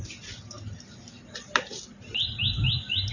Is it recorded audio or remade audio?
remade